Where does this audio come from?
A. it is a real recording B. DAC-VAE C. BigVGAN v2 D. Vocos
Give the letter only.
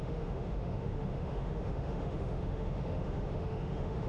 B